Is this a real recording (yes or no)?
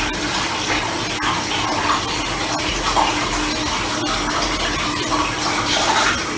yes